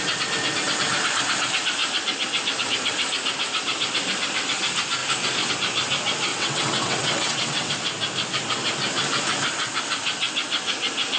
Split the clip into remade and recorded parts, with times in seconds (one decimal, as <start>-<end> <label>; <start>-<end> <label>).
0.0-6.3 recorded; 6.3-7.7 remade; 7.7-11.2 recorded

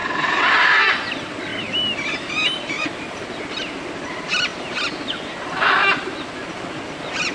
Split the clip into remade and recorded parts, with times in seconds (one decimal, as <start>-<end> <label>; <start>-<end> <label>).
0.0-0.5 remade; 0.5-7.3 recorded

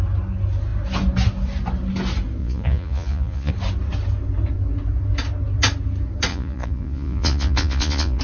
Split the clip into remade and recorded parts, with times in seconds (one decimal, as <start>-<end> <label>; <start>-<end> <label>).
0.0-2.4 recorded; 2.4-3.5 remade; 3.5-6.3 recorded; 6.3-8.2 remade

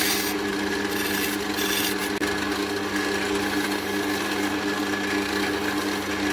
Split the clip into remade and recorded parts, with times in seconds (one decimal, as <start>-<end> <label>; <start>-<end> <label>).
0.0-6.3 recorded

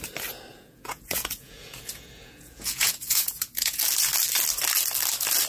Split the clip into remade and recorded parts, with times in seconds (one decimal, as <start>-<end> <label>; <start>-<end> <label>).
0.0-0.5 recorded; 0.5-3.8 remade; 3.8-5.5 recorded